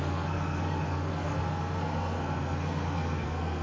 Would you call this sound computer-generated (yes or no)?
yes